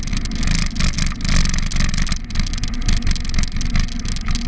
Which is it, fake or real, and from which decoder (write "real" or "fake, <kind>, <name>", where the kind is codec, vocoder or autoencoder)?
real